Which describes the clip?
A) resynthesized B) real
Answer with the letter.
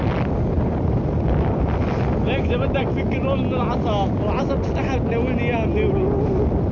B